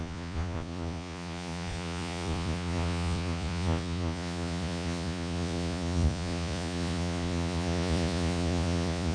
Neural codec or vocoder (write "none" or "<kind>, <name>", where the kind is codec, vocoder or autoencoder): vocoder, Vocos